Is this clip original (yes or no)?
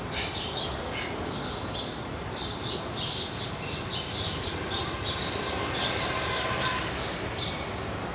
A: yes